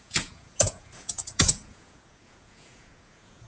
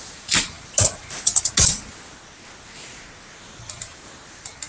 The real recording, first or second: second